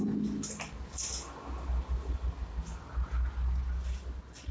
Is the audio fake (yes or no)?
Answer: no